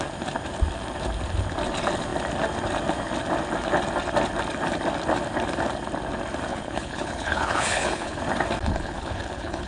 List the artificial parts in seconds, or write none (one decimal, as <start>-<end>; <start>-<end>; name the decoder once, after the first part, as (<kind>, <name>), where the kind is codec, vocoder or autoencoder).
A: 6.5-8.2 (codec, HILCodec); 8.7-9.7